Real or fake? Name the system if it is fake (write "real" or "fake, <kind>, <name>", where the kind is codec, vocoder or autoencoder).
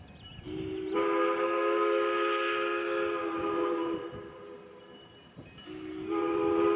real